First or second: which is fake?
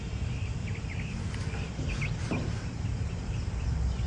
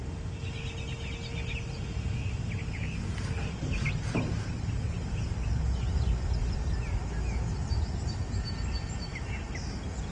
first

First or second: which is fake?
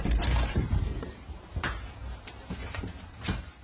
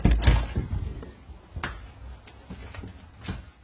first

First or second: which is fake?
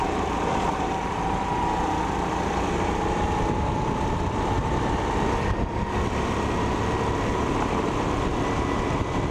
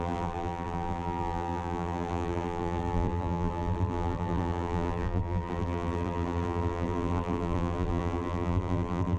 second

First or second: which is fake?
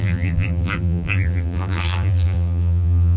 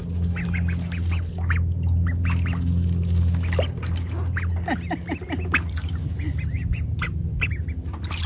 first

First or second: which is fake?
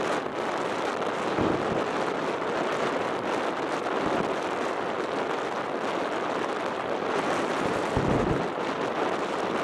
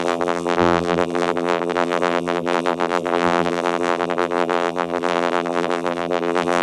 second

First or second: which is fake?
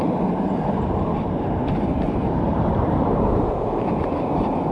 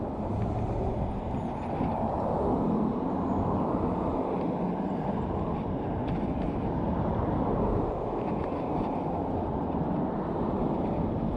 first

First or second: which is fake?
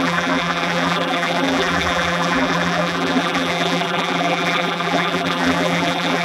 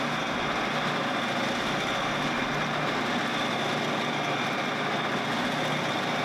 first